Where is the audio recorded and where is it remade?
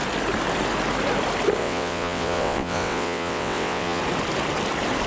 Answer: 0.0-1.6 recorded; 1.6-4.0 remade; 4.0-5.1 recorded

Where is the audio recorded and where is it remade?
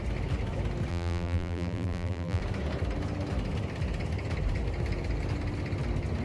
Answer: 0.0-0.9 recorded; 0.9-2.4 remade; 2.4-6.2 recorded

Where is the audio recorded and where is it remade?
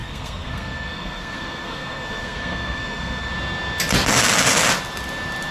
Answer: 0.0-3.3 remade; 3.3-5.5 recorded